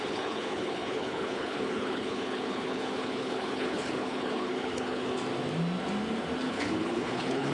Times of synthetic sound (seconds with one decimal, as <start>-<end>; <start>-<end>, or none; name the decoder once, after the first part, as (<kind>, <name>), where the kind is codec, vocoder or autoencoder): 0.0-5.1 (codec, HILCodec); 6.5-7.5